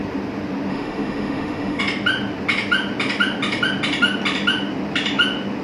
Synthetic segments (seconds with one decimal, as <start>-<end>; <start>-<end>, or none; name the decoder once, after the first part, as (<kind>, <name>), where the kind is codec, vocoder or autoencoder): 0.7-1.8 (autoencoder, DAC-VAE)